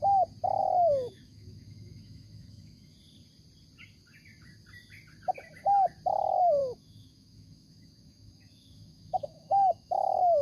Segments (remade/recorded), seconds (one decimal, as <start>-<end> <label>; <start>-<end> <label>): 0.0-0.6 recorded; 0.6-2.9 remade; 2.9-6.6 recorded; 6.6-10.4 remade